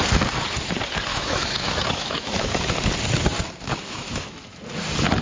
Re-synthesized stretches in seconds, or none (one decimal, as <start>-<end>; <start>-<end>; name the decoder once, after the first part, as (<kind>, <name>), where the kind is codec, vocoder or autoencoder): 1.1-2.6 (autoencoder, DAC-VAE); 3.7-4.6

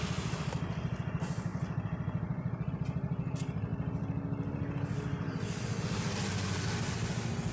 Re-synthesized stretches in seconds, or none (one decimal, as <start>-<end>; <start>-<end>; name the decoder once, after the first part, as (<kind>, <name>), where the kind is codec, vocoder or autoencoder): none

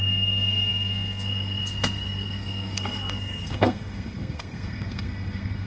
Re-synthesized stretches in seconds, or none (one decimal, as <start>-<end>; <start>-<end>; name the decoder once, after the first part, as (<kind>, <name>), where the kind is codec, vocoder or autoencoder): 0.0-5.7 (codec, SNAC)